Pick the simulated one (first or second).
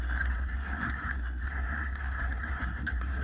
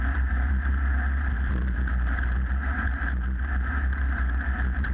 first